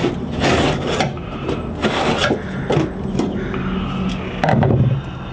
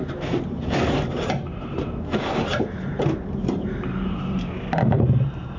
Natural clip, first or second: first